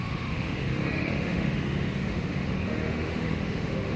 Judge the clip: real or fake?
fake